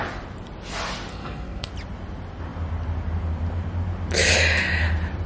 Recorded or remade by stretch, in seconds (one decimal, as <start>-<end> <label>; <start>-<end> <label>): 0.0-1.1 recorded; 1.1-1.7 remade; 1.7-5.3 recorded